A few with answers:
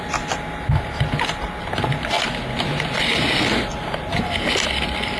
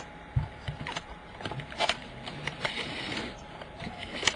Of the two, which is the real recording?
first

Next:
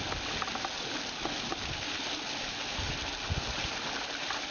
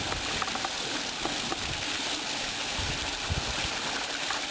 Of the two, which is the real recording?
first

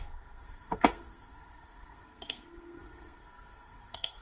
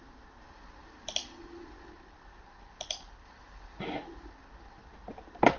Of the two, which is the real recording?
second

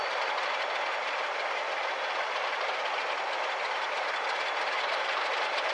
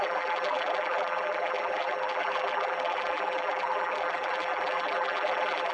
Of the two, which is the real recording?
first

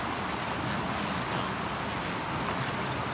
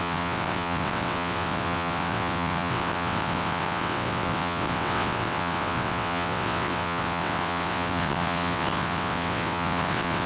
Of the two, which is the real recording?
first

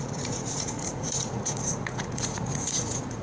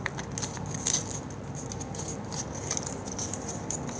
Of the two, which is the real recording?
second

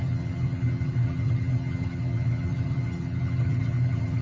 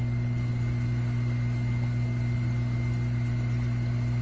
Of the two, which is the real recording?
second